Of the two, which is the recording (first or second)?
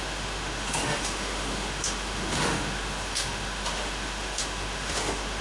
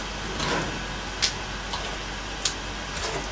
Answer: second